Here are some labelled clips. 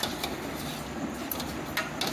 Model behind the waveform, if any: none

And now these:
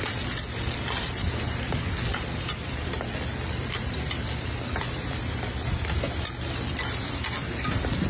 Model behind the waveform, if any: vocoder, BigVGAN v2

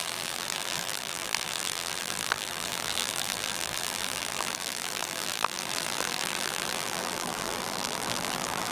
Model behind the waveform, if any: vocoder, BigVGAN v2